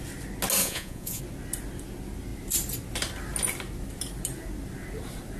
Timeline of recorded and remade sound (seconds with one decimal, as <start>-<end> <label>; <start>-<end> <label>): 0.0-0.6 recorded; 0.6-1.2 remade; 1.2-5.4 recorded